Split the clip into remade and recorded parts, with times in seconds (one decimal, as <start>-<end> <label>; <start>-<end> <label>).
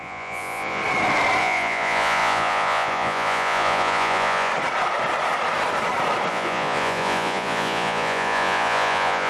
0.0-0.8 remade; 0.8-1.4 recorded; 1.4-4.5 remade; 4.5-6.3 recorded; 6.3-9.3 remade